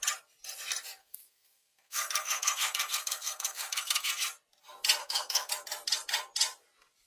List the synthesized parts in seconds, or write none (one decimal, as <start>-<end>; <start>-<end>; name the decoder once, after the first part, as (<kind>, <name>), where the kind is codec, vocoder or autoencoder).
1.0-4.1 (codec, SNAC); 5.0-5.5